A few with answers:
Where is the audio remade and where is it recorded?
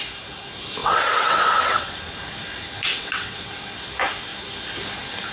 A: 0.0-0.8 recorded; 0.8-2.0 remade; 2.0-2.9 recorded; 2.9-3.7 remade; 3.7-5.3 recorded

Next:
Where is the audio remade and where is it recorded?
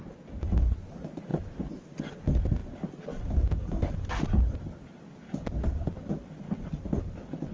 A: 0.0-7.5 recorded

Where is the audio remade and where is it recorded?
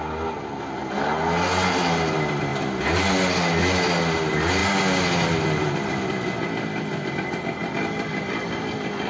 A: 0.0-9.1 recorded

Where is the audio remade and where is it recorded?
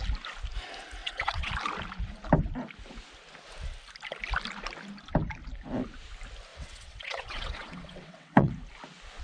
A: 0.0-1.0 recorded; 1.0-1.5 remade; 1.5-6.5 recorded; 6.5-8.5 remade; 8.5-9.2 recorded